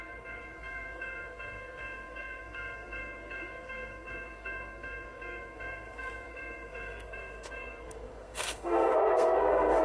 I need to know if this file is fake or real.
fake